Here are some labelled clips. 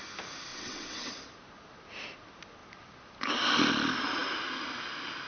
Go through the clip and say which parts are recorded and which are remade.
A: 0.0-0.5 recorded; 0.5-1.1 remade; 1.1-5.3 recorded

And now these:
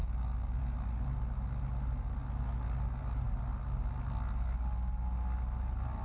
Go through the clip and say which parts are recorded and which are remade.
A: 0.0-6.0 recorded

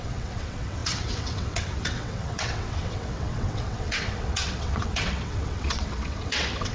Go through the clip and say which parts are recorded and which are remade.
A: 0.0-6.7 remade

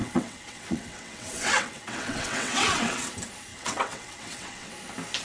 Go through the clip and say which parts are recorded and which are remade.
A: 0.0-3.1 remade; 3.1-3.5 recorded; 3.5-4.7 remade; 4.7-5.2 recorded

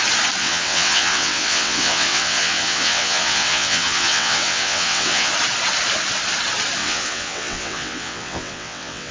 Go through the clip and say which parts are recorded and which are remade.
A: 0.0-0.4 recorded; 0.4-5.3 remade; 5.3-6.8 recorded; 6.8-9.1 remade